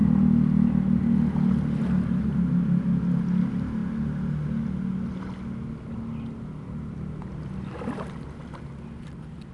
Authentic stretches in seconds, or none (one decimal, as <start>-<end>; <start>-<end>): 0.0-9.5